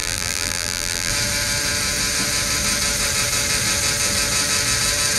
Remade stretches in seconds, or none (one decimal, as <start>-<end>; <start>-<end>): 0.0-1.1